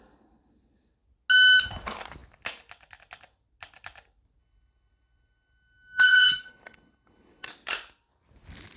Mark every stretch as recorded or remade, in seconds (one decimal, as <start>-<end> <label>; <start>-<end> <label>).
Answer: 0.0-4.4 recorded; 4.4-7.5 remade; 7.5-8.8 recorded